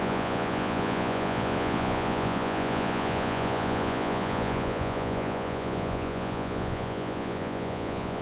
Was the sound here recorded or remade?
remade